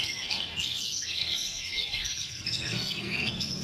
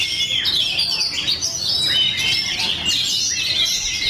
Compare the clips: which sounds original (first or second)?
second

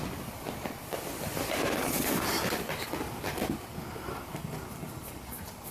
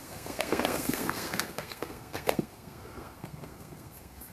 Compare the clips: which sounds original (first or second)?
first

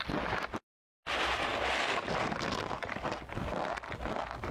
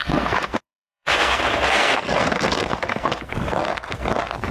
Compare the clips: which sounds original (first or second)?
first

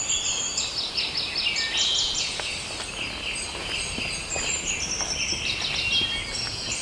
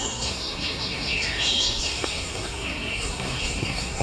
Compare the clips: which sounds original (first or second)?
first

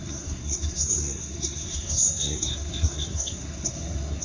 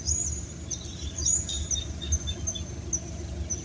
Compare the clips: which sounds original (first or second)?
second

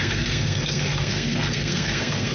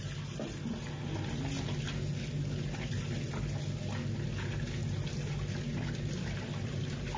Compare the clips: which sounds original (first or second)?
second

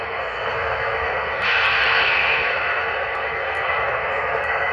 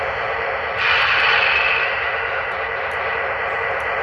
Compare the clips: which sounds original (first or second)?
second